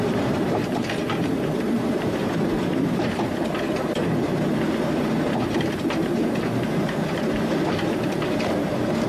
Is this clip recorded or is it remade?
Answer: remade